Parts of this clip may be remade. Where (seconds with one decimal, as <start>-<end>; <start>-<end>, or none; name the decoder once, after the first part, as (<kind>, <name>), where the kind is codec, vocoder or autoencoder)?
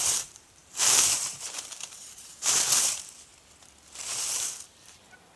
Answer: 0.0-3.3 (vocoder, BigVGAN v2); 4.2-5.4